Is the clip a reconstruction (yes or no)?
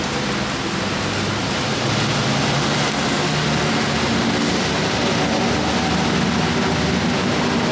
no